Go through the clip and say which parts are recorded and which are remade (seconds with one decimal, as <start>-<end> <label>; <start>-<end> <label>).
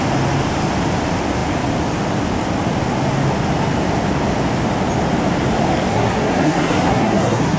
0.0-5.9 recorded; 5.9-7.6 remade